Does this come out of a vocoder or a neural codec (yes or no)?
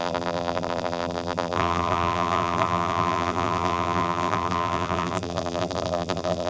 yes